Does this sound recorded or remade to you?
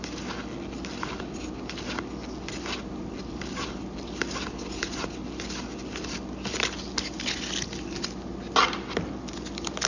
recorded